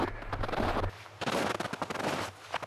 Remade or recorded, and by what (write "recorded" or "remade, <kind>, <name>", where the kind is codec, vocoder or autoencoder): recorded